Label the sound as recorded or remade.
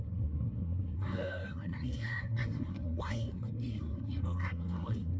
remade